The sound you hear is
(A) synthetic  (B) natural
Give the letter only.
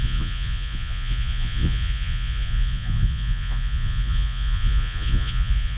A